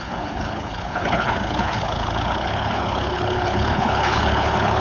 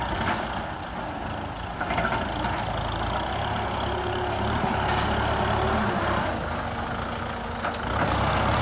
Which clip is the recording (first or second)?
second